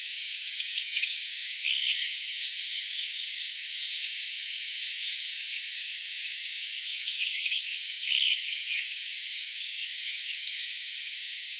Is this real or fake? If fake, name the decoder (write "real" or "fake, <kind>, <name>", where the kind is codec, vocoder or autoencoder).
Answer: fake, codec, SNAC